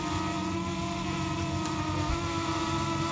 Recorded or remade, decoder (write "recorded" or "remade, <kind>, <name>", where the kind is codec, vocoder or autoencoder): recorded